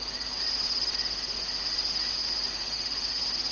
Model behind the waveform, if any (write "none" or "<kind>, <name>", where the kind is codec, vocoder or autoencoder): none